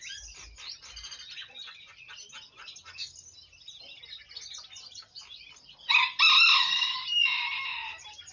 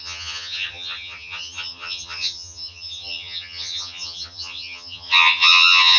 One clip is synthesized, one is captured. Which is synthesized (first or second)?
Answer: second